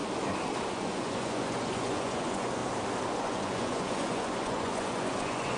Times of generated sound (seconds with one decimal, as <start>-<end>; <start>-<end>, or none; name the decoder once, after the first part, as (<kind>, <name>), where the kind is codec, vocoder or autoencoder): 0.7-2.6 (vocoder, Vocos); 3.2-5.6